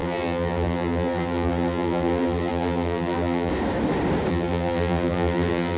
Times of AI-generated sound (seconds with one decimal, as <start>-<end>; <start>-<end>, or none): 0.0-3.5; 4.3-5.8